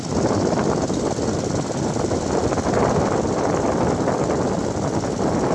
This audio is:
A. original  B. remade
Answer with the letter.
A